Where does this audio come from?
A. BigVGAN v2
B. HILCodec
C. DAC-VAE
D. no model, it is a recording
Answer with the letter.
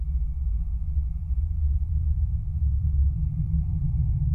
D